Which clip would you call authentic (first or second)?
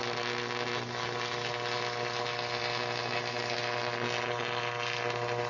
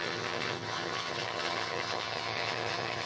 first